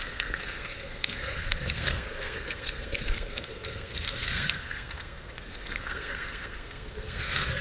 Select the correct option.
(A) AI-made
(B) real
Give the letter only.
A